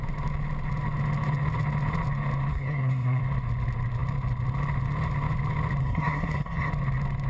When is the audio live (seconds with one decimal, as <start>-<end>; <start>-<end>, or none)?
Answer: 0.0-2.5; 3.2-5.8; 6.7-7.3